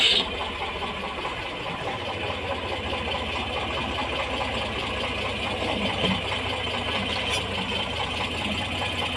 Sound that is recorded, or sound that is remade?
recorded